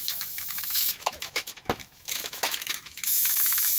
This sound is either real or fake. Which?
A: fake